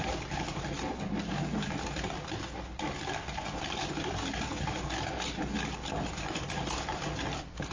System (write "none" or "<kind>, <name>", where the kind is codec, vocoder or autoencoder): none